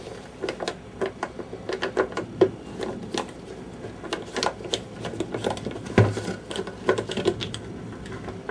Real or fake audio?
real